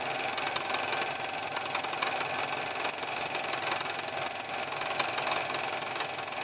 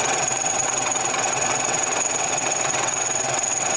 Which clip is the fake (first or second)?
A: second